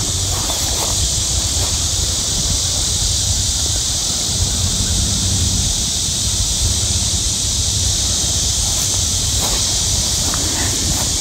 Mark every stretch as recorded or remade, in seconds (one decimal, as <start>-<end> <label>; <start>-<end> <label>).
0.0-11.2 remade